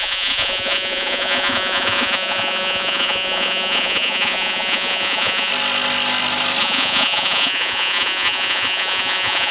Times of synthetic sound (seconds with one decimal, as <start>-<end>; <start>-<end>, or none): 0.0-5.5; 6.6-9.5